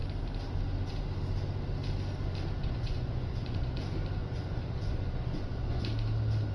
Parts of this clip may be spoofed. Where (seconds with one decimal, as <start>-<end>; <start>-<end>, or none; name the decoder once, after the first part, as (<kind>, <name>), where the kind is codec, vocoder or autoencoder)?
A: 2.6-3.8 (vocoder, Vocos); 4.2-5.8